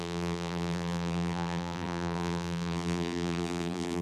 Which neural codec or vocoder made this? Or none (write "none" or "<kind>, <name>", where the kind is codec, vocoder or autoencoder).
vocoder, BigVGAN v2